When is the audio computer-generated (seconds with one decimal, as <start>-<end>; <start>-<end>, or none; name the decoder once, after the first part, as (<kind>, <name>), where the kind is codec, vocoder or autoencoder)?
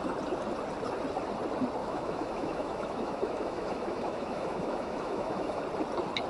1.8-5.6 (autoencoder, DAC-VAE)